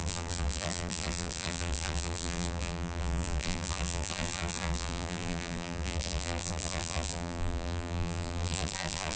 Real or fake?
fake